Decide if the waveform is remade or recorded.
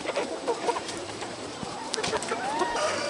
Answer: remade